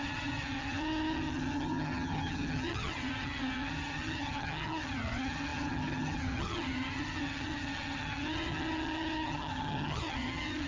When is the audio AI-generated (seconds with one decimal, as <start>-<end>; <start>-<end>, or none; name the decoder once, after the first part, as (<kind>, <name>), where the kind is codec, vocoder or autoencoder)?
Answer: 0.0-10.7 (vocoder, HiFi-GAN)